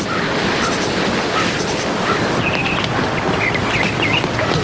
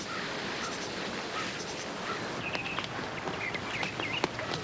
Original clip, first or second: second